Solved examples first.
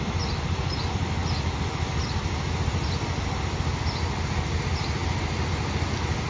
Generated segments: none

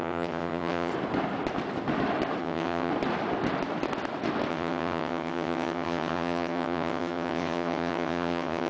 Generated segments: 0.0-0.9; 2.4-2.9; 4.5-8.7

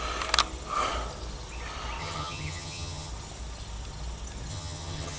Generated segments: 2.0-3.1; 4.5-5.2

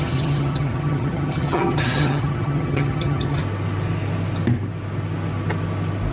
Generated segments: 0.0-3.4

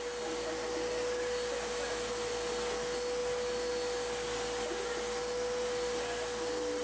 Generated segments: none

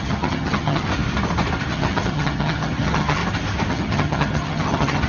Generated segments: 0.0-0.9; 1.7-3.2; 3.7-5.1

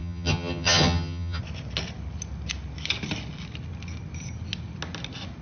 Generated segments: 0.0-1.4